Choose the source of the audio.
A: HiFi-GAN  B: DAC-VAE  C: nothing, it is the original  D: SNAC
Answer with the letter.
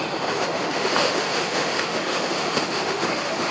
B